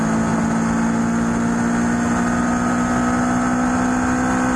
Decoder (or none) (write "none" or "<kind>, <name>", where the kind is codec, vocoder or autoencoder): none